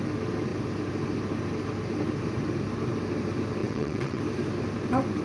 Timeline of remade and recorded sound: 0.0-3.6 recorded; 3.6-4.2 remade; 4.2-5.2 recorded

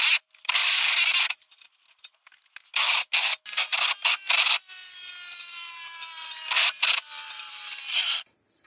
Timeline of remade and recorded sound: 0.0-0.6 recorded; 0.6-2.0 remade; 2.0-5.3 recorded; 5.3-8.7 remade

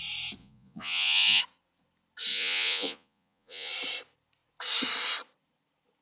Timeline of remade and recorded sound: 0.0-0.4 recorded; 0.4-1.4 remade; 1.4-2.3 recorded; 2.3-3.7 remade; 3.7-6.0 recorded

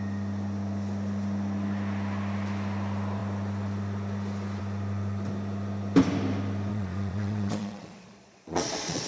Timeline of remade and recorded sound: 0.0-6.7 recorded; 6.7-9.1 remade

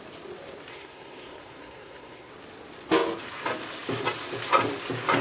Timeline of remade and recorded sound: 0.0-0.7 recorded; 0.7-2.3 remade; 2.3-5.2 recorded

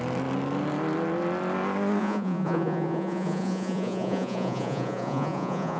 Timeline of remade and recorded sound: 0.0-2.0 recorded; 2.0-5.8 remade

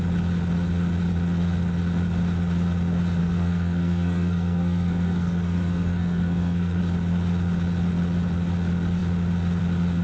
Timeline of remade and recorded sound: 0.0-3.2 recorded; 3.2-6.8 remade; 6.8-10.0 recorded